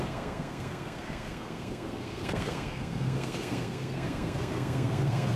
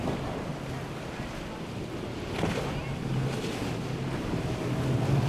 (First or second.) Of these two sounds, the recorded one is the second